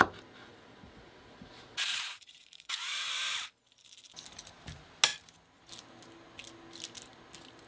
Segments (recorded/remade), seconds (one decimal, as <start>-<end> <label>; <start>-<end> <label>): 0.0-0.4 recorded; 0.4-3.1 remade; 3.1-7.7 recorded

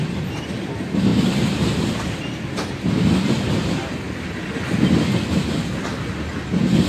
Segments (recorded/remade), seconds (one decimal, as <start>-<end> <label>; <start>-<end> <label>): 0.0-6.9 recorded

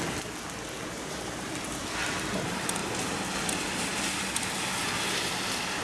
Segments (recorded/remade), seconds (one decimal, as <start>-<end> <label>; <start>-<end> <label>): 0.0-5.8 recorded

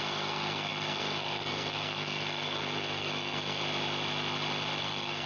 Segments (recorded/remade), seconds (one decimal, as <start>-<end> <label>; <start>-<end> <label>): 0.0-3.6 remade; 3.6-4.8 recorded; 4.8-5.3 remade

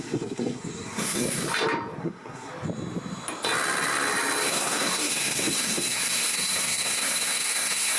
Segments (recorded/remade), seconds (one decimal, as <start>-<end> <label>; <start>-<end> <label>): 0.0-1.4 remade; 1.4-2.0 recorded; 2.0-2.5 remade; 2.5-4.5 recorded; 4.5-8.0 remade